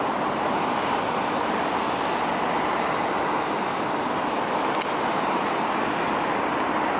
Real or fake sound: real